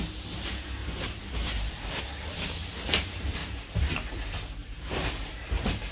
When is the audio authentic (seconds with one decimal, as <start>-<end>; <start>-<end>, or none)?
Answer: 0.0-0.8; 2.0-3.4; 4.1-4.6